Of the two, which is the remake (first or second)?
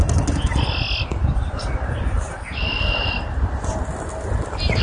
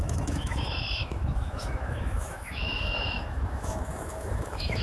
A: second